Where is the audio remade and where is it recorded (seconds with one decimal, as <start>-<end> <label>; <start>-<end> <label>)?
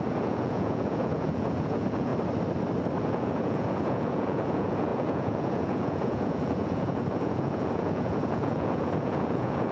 0.0-2.1 remade; 2.1-3.0 recorded; 3.0-9.7 remade